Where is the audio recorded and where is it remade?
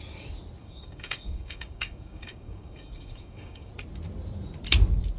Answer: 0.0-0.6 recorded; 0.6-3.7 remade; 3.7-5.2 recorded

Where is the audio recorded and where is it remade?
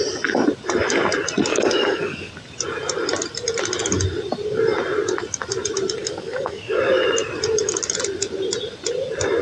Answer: 0.0-1.5 recorded; 1.5-2.3 remade; 2.3-6.0 recorded; 6.0-6.8 remade; 6.8-9.4 recorded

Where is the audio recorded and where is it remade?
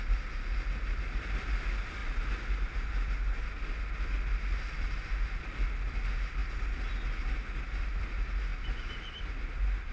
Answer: 0.0-9.9 recorded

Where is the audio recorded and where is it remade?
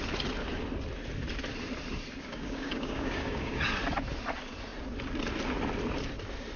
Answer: 0.0-2.3 recorded; 2.3-3.6 remade; 3.6-6.6 recorded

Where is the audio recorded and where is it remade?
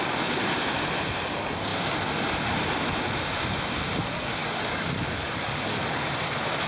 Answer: 0.0-4.4 recorded; 4.4-6.1 remade; 6.1-6.7 recorded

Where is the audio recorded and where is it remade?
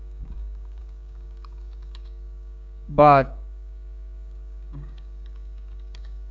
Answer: 0.0-6.3 remade